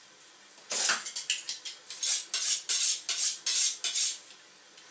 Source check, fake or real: real